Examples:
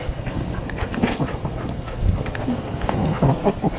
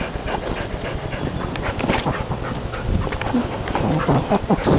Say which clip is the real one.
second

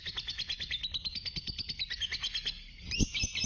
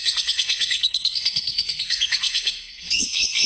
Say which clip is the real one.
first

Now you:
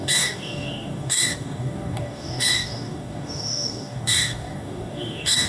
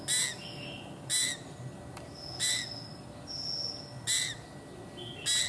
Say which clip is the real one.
second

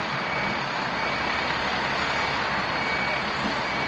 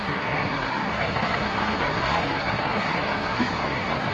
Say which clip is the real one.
first